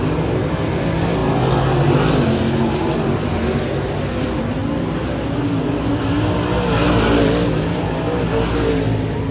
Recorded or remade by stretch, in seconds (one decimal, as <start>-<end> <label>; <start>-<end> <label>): 0.0-9.3 recorded